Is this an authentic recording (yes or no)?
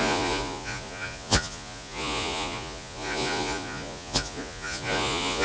no